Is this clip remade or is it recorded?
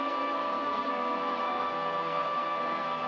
remade